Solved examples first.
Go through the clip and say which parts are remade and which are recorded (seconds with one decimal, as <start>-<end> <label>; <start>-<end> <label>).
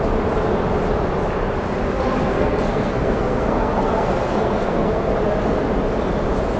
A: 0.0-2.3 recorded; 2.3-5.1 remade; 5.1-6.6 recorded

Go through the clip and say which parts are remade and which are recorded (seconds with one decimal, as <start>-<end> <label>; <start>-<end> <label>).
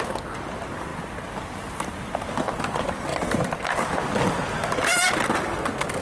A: 0.0-3.1 recorded; 3.1-4.0 remade; 4.0-6.0 recorded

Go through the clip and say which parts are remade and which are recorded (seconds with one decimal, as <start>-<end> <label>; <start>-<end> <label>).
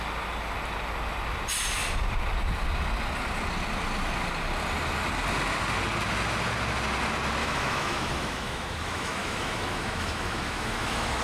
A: 0.0-7.4 recorded; 7.4-11.2 remade